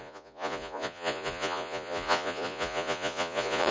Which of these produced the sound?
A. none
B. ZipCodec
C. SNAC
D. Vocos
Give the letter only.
D